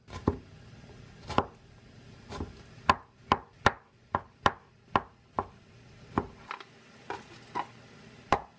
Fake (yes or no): no